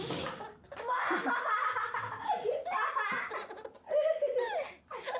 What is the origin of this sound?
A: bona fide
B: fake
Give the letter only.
A